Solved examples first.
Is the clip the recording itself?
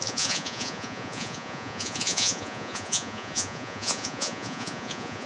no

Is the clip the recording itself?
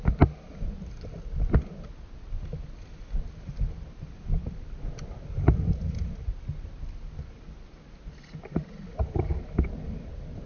yes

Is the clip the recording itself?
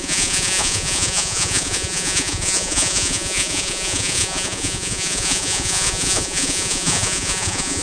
no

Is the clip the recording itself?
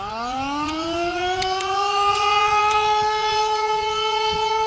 no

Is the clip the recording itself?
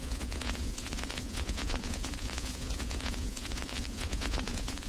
no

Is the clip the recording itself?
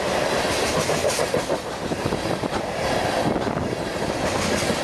yes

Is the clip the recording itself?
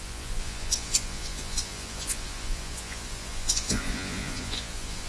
no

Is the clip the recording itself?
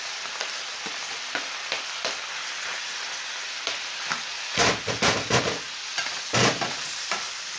yes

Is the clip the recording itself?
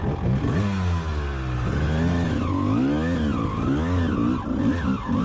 yes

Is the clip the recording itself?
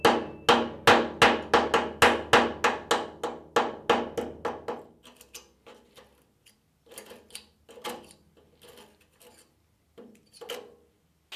yes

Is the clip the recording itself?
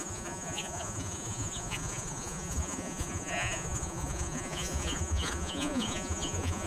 no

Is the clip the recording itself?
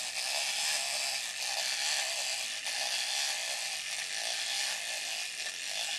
yes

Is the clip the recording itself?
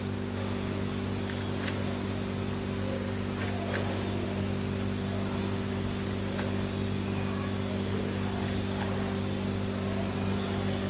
yes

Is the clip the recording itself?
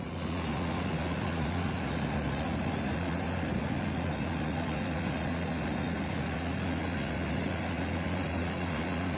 no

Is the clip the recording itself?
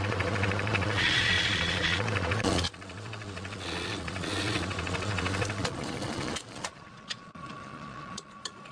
no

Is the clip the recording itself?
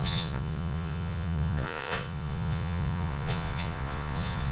no